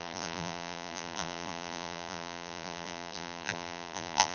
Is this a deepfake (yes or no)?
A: yes